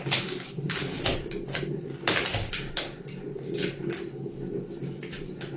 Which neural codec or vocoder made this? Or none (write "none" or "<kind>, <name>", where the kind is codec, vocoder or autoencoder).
none